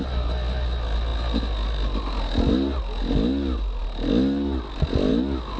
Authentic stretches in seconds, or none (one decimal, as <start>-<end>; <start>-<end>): 0.0-5.6